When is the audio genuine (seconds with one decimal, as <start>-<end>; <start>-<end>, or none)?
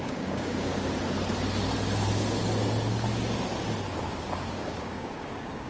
0.7-4.1